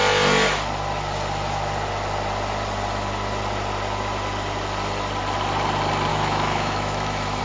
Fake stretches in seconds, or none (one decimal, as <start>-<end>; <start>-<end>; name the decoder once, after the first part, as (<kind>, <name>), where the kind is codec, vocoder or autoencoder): 6.1-7.4 (autoencoder, DAC-VAE)

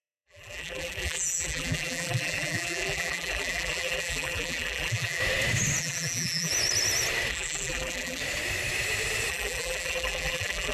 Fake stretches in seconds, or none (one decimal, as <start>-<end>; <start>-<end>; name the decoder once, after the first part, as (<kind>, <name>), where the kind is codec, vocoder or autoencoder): 0.0-5.2 (vocoder, BigVGAN v2); 5.8-6.5; 7.3-8.2; 9.3-10.7